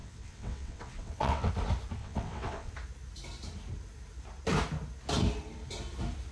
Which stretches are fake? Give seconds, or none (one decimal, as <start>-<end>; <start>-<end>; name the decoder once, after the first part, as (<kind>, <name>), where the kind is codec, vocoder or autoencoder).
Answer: 0.0-1.5 (vocoder, WaveNeXt); 2.0-2.7